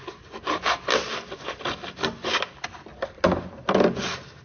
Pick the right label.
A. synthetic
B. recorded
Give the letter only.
B